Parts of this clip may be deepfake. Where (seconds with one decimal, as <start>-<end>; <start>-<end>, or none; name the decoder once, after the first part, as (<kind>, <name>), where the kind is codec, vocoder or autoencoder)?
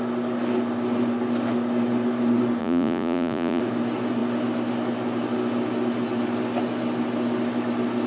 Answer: 2.6-3.6 (vocoder, Vocos)